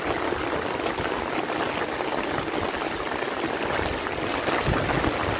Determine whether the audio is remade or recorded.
recorded